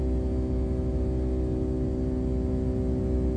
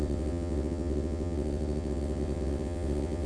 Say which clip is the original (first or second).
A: first